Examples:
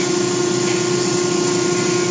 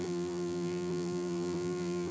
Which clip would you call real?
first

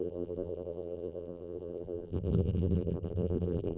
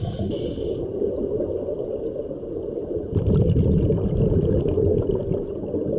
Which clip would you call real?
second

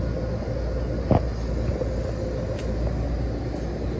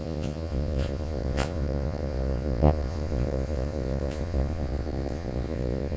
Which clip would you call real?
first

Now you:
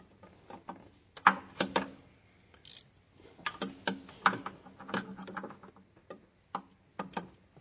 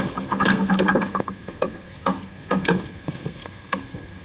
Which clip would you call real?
first